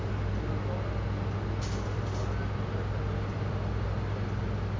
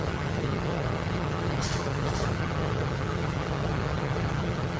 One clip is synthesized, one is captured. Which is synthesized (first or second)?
second